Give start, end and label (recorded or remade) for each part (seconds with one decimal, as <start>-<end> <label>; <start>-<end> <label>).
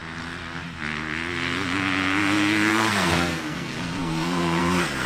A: 0.0-2.7 recorded; 2.7-5.1 remade